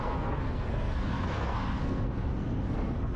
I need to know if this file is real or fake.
fake